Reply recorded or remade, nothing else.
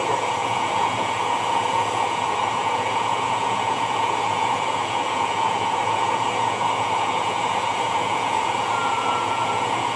remade